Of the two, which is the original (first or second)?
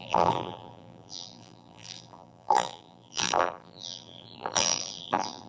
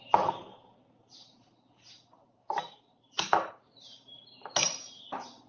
second